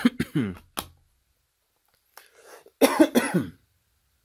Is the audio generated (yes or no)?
no